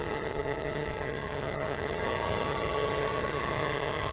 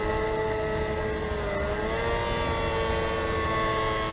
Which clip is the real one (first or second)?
second